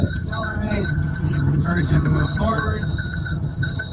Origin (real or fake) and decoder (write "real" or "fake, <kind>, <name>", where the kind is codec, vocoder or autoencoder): fake, vocoder, HiFi-GAN